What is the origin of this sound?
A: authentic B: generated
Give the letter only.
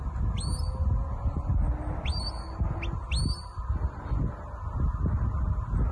A